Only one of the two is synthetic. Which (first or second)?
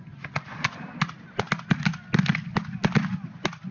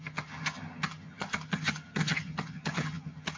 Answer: second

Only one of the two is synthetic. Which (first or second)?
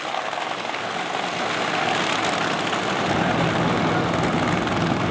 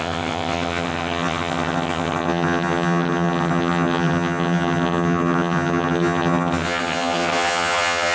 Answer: second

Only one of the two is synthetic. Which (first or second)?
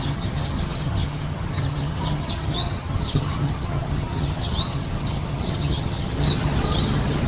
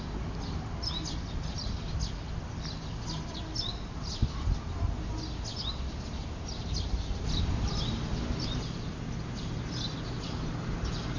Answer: first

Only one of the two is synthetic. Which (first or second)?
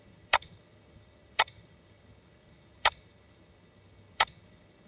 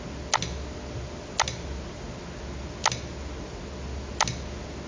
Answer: first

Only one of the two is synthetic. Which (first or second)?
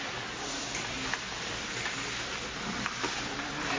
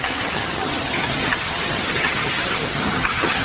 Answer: second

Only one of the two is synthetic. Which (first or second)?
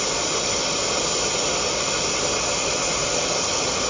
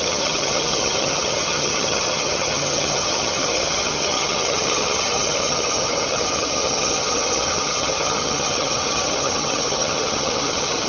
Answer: second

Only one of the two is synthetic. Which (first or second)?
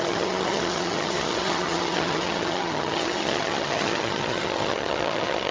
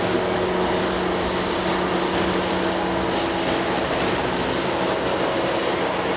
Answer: first